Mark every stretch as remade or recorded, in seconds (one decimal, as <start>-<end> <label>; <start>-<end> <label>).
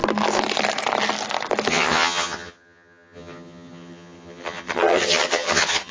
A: 0.0-1.7 recorded; 1.7-5.9 remade